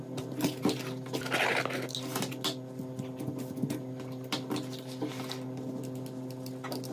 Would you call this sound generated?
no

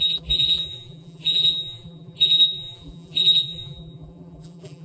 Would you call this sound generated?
yes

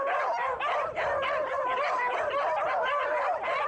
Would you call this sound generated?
yes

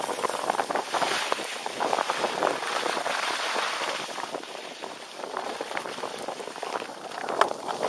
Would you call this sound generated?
yes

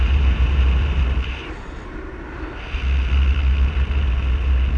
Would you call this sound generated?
no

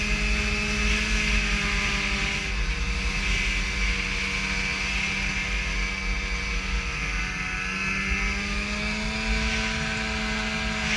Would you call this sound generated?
no